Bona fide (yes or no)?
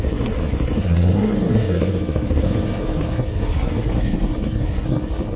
no